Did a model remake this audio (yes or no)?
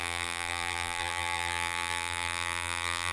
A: yes